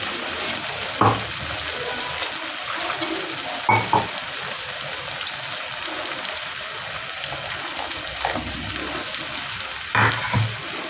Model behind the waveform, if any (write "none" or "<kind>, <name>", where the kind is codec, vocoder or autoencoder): none